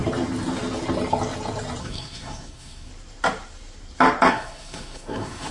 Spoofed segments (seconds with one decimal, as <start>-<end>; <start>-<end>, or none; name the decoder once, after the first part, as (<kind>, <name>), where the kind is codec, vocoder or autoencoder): 1.8-2.9 (codec, SNAC); 4.3-5.5